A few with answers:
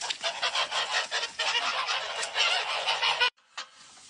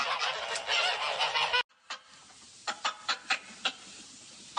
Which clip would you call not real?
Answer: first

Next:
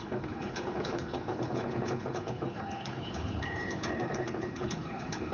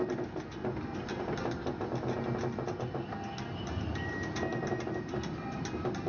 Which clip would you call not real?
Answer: first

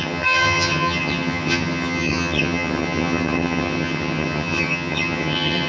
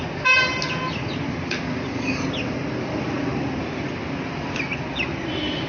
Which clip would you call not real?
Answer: first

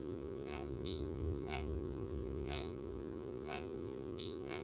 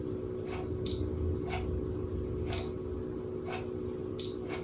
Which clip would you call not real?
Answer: first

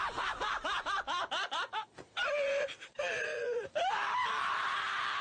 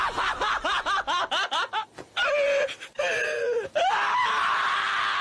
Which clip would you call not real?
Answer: first